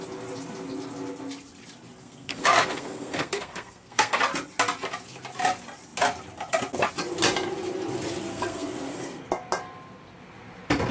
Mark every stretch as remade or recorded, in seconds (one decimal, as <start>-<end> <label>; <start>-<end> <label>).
0.0-2.0 recorded; 2.0-4.2 remade; 4.2-8.3 recorded; 8.3-9.2 remade; 9.2-10.9 recorded